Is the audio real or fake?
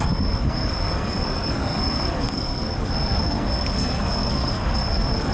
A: fake